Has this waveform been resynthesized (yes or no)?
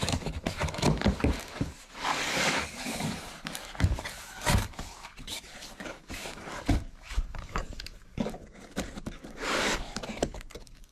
yes